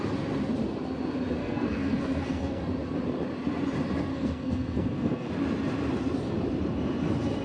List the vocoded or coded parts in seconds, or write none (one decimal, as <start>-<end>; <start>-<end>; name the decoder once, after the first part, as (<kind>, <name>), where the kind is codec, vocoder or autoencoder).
1.4-2.6 (codec, SNAC); 4.1-5.3